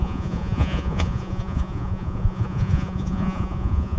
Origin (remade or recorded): remade